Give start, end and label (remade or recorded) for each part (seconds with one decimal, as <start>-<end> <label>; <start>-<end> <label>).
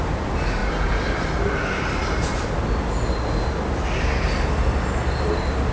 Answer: 0.0-5.7 recorded